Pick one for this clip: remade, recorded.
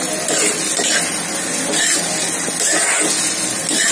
recorded